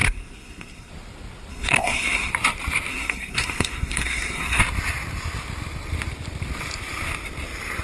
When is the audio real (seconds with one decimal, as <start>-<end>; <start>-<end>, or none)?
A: 0.9-1.5; 2.3-2.9; 4.6-7.8